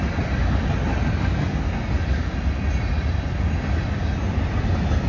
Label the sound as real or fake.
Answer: real